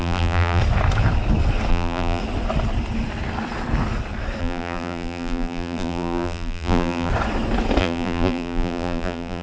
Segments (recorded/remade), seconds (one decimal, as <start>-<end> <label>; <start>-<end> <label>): 0.0-0.6 remade; 0.6-1.7 recorded; 1.7-2.2 remade; 2.2-4.4 recorded; 4.4-7.1 remade; 7.1-7.8 recorded; 7.8-9.4 remade